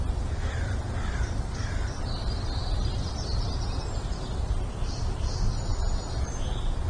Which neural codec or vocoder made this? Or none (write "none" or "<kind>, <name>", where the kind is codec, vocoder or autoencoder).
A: vocoder, BigVGAN v2